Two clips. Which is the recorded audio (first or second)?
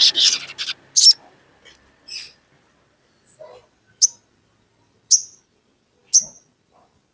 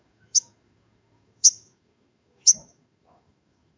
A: first